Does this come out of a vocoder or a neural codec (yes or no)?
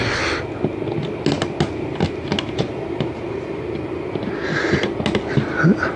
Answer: no